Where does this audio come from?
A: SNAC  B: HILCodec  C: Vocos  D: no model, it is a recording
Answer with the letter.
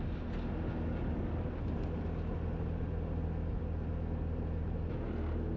D